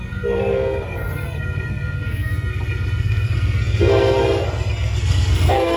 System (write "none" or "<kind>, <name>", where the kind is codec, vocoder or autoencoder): codec, SNAC